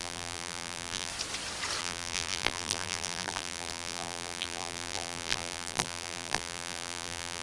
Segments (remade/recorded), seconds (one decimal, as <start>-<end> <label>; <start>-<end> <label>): 0.0-1.1 remade; 1.1-1.8 recorded; 1.8-7.4 remade